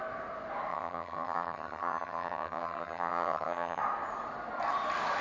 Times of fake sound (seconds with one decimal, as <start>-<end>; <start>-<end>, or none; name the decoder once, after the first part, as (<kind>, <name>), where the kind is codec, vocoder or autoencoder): 0.7-3.8 (vocoder, HiFi-GAN)